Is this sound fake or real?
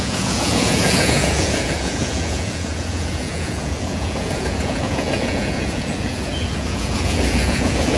fake